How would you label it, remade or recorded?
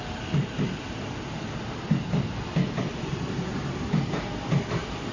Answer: recorded